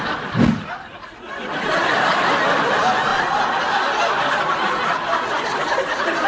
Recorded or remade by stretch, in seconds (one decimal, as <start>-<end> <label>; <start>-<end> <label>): 0.0-6.3 recorded